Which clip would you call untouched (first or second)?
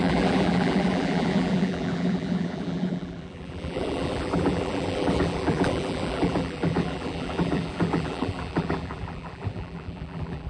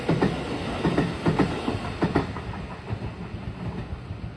second